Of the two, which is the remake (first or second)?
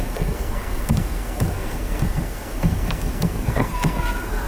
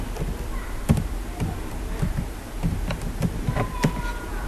first